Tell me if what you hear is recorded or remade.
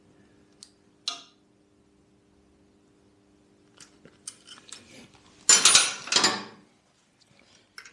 recorded